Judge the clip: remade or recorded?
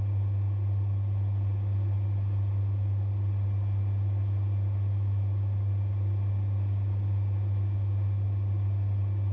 recorded